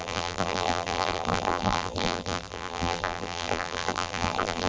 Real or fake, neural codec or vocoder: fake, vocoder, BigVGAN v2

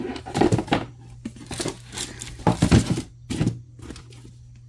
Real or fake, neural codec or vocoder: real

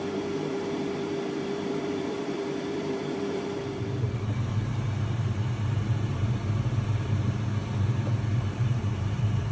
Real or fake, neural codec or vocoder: fake, vocoder, BigVGAN v2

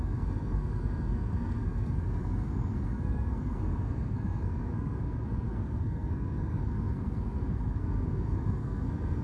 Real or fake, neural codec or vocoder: fake, codec, SNAC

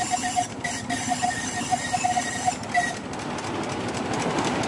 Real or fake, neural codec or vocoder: real